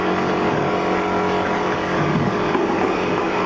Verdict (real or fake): fake